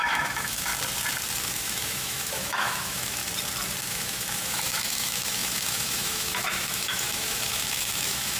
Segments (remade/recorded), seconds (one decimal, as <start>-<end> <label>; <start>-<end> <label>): 0.0-0.7 remade; 0.7-1.4 recorded; 1.4-3.2 remade; 3.2-3.9 recorded; 3.9-8.4 remade